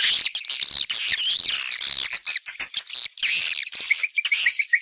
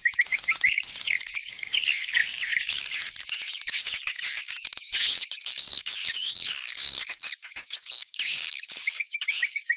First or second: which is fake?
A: second